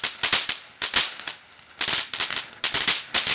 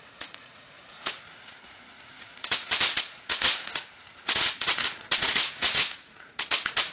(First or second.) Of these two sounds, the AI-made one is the second